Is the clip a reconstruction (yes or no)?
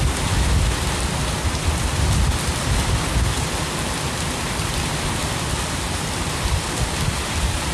no